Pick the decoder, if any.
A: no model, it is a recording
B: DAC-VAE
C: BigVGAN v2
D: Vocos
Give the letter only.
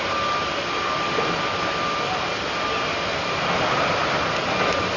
A